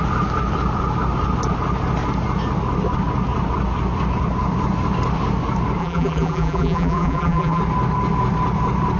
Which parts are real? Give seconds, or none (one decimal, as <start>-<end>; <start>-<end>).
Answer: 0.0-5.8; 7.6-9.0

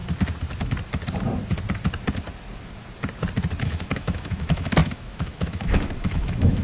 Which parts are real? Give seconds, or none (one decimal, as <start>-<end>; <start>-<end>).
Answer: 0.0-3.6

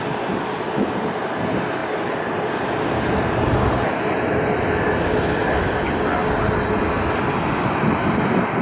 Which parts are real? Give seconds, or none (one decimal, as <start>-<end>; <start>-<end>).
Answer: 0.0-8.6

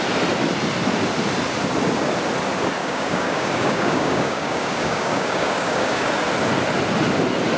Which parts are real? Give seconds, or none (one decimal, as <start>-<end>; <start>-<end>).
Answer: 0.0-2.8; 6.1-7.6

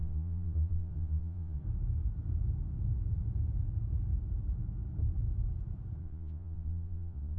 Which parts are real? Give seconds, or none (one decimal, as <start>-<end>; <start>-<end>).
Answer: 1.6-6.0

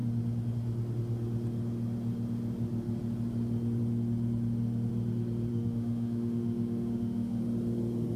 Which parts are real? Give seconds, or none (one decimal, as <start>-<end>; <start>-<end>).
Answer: 0.0-5.5; 7.4-8.2